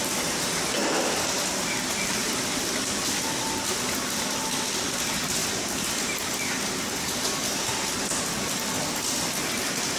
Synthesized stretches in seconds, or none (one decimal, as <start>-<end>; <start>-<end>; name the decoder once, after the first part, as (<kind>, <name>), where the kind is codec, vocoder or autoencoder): none